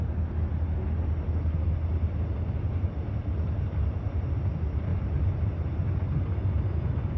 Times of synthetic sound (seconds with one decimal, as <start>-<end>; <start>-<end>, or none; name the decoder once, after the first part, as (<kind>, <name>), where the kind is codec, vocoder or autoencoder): 4.9-5.9 (vocoder, BigVGAN v2)